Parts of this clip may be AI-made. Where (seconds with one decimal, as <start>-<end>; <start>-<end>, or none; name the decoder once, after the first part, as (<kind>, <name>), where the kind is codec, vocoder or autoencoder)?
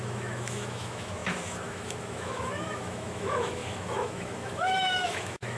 0.0-5.6 (autoencoder, DAC-VAE)